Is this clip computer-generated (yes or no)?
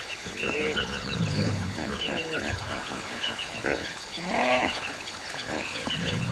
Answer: yes